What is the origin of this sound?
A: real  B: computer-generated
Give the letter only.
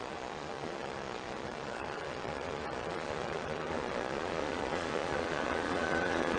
B